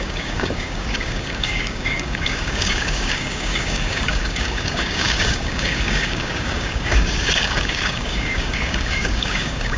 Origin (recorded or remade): remade